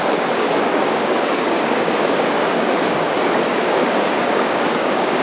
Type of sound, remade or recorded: remade